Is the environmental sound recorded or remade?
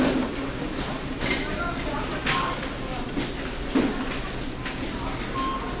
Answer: recorded